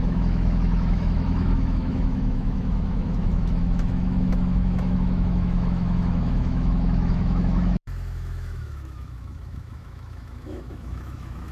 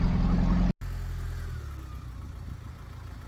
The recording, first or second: second